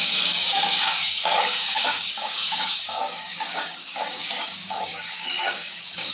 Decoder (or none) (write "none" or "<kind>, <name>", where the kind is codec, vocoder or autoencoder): codec, DAC